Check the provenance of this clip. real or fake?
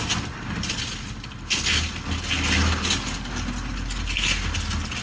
real